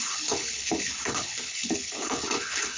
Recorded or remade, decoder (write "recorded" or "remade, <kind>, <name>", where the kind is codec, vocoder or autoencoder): remade, codec, HILCodec